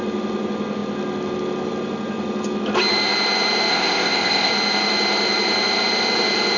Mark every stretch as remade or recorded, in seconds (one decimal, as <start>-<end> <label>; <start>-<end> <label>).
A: 0.0-3.7 recorded; 3.7-4.5 remade; 4.5-6.6 recorded